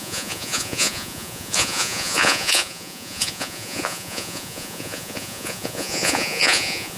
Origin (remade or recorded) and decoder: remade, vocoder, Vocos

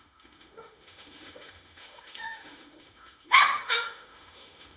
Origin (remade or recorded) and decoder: remade, autoencoder, DAC-VAE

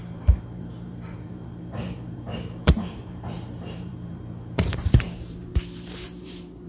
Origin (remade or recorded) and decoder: remade, vocoder, BigVGAN v2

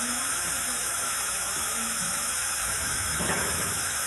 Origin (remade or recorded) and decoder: remade, autoencoder, DAC-VAE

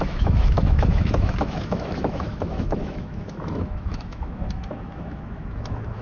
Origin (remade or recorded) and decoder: remade, autoencoder, DAC-VAE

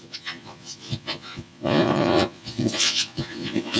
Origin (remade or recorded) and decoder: remade, vocoder, Vocos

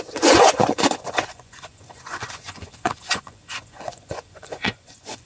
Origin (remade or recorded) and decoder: remade, vocoder, Vocos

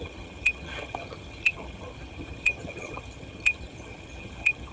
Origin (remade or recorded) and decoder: remade, vocoder, HiFi-GAN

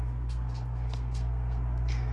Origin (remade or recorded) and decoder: remade, codec, SNAC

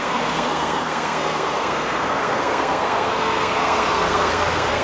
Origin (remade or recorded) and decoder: remade, codec, SNAC